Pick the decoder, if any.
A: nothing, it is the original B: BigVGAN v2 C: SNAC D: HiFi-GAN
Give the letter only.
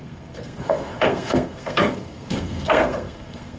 C